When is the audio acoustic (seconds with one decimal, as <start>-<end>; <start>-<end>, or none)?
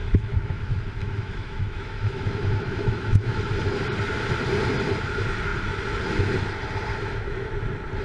0.6-1.0; 3.5-6.9; 7.5-8.0